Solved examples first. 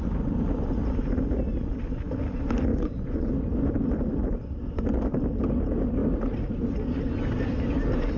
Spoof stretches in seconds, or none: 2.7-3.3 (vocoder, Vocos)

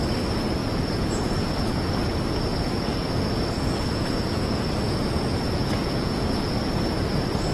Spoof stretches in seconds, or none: 0.6-1.9 (vocoder, Vocos); 2.5-6.6

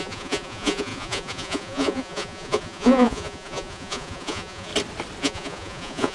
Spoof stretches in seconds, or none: 0.0-4.7 (vocoder, Vocos); 5.2-6.1

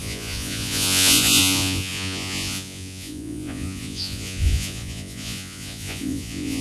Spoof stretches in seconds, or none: 0.0-6.6 (vocoder, Vocos)

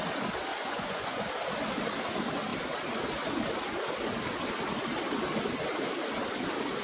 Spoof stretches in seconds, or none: 0.5-1.2 (vocoder, Vocos)

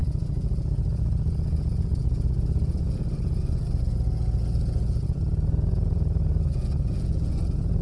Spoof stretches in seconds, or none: 0.0-7.8 (vocoder, Vocos)

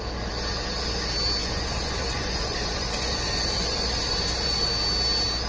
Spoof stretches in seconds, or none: 1.4-4.7 (vocoder, Vocos)